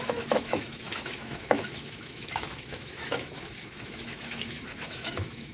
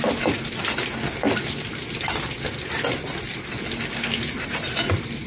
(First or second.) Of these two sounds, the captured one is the second